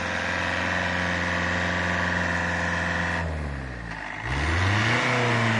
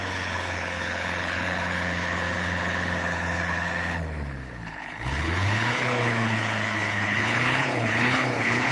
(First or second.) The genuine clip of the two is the first